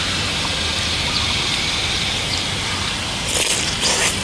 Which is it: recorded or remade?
recorded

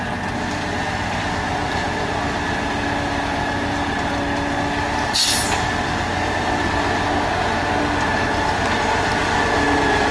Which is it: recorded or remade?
recorded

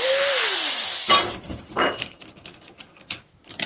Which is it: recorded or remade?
remade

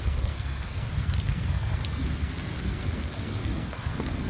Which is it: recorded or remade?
remade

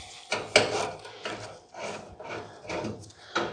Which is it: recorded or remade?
recorded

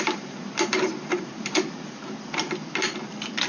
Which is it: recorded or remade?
remade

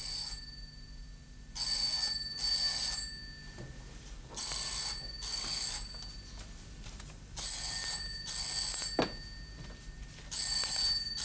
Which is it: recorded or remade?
recorded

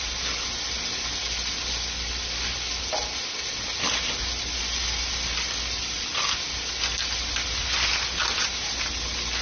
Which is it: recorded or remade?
recorded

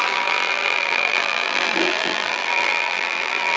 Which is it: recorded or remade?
remade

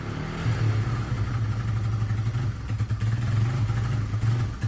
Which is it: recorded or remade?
recorded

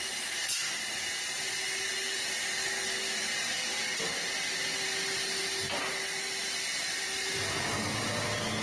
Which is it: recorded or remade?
recorded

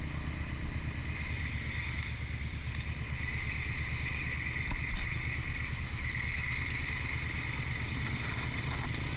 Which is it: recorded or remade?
recorded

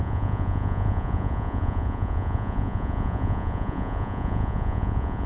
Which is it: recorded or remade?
remade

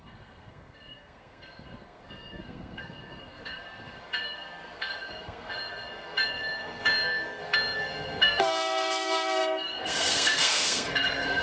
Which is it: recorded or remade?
remade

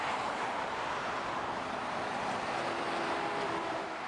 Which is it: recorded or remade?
recorded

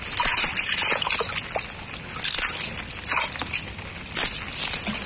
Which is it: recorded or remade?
recorded